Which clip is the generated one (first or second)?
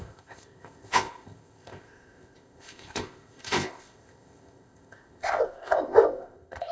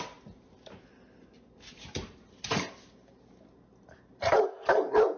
first